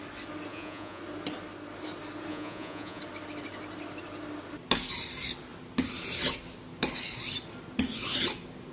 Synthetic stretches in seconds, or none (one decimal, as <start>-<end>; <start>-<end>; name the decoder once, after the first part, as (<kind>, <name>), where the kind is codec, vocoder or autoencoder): 0.5-1.0 (vocoder, Vocos); 2.3-3.0